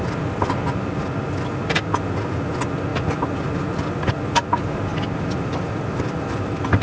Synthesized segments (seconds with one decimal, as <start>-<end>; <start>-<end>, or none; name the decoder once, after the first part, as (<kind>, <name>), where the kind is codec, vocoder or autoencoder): 4.9-6.8 (vocoder, BigVGAN v2)

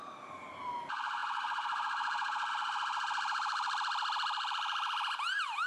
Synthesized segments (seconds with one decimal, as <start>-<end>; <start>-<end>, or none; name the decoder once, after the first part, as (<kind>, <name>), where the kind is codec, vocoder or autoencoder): 0.0-5.7 (vocoder, BigVGAN v2)

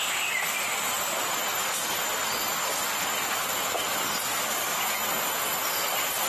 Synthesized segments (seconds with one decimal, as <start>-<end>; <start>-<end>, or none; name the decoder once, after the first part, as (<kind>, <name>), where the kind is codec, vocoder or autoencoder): 0.0-1.6 (vocoder, BigVGAN v2); 3.3-4.7

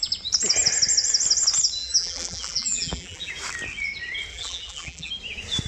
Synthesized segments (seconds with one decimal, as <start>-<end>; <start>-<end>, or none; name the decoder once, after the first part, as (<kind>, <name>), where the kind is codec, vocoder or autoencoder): 1.8-3.3 (vocoder, BigVGAN v2); 4.3-5.1

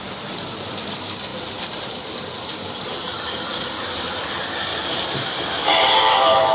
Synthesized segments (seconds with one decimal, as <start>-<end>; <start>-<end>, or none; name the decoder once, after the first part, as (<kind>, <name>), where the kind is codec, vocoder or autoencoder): 0.0-6.5 (vocoder, BigVGAN v2)

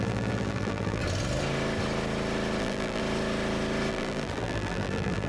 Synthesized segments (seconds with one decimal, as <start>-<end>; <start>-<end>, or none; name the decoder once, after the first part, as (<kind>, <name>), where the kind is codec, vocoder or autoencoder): 0.0-1.0 (vocoder, BigVGAN v2); 2.6-3.0; 3.9-5.3

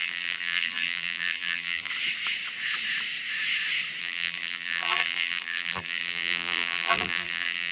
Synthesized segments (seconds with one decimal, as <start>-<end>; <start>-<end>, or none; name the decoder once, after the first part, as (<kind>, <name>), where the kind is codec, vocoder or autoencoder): 0.0-1.9 (vocoder, BigVGAN v2); 4.0-7.7

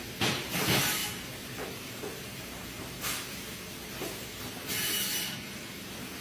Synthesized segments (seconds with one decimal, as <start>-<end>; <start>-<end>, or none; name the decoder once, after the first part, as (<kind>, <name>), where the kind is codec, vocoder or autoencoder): none